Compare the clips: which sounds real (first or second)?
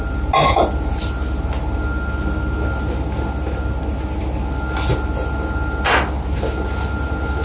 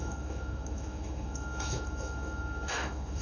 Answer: first